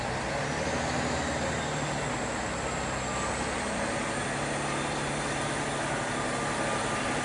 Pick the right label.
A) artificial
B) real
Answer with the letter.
B